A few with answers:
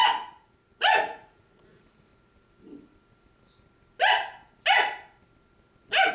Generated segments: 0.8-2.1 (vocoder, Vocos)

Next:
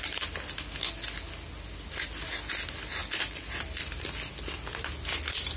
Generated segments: none